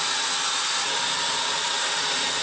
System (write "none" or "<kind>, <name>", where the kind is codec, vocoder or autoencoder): none